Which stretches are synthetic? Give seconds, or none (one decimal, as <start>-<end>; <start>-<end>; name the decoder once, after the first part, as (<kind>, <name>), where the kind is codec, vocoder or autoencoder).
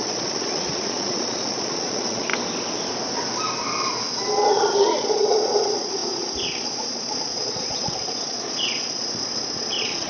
0.0-2.3 (vocoder, Vocos); 4.5-10.1